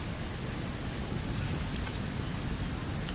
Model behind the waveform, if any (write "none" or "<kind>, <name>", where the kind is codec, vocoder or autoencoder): none